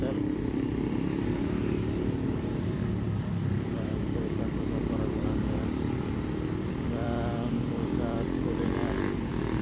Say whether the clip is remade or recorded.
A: remade